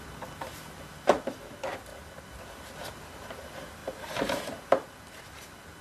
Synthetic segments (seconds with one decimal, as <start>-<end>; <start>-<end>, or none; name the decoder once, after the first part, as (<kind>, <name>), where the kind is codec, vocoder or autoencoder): none